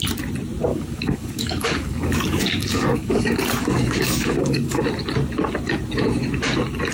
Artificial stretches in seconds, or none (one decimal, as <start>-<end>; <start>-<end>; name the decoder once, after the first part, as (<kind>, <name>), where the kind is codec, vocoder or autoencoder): 0.7-4.8 (codec, DAC)